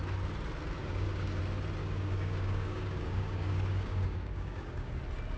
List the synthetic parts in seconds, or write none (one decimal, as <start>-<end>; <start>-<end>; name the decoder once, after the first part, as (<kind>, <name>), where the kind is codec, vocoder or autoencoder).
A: 0.8-1.4 (codec, DAC); 1.8-5.0